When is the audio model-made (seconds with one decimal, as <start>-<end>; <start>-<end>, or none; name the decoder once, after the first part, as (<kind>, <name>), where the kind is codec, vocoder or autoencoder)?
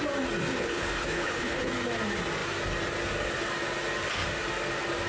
0.5-1.7 (codec, HILCodec)